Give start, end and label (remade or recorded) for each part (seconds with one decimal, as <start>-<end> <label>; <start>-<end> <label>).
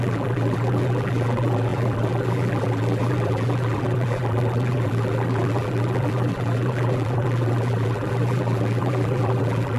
0.0-9.8 remade